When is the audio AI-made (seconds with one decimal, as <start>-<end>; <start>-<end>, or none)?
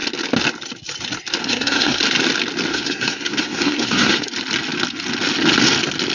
1.4-2.0; 2.7-4.3